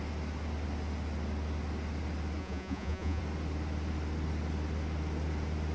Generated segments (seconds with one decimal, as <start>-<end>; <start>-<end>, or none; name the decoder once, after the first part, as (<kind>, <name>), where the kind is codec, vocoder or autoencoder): 2.4-3.2 (vocoder, Vocos)